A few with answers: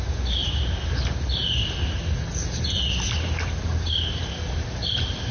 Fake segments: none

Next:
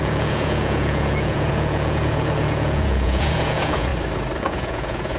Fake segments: 0.0-3.9 (vocoder, Vocos); 4.4-5.2

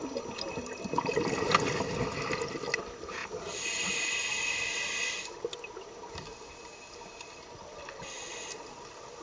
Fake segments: none

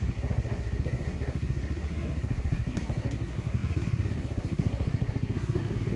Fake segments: 0.0-6.0 (codec, SNAC)

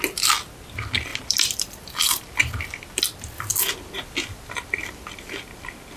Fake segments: 1.1-3.0 (vocoder, BigVGAN v2)